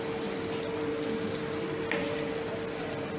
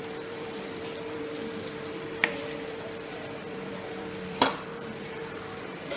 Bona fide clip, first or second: first